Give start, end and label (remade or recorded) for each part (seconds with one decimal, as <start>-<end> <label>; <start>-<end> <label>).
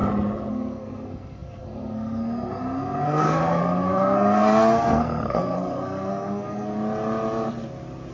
0.0-0.5 recorded; 0.5-6.7 remade; 6.7-8.1 recorded